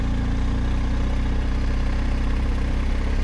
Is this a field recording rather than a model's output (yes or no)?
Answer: yes